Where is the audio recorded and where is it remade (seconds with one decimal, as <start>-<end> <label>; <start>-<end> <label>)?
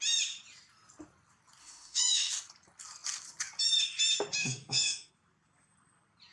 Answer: 0.0-1.6 recorded; 1.6-2.3 remade; 2.3-4.4 recorded; 4.4-5.1 remade; 5.1-6.3 recorded